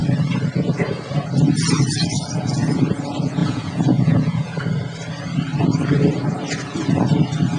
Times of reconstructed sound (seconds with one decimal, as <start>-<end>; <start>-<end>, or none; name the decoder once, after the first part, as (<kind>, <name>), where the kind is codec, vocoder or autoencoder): 3.4-4.6 (vocoder, Vocos)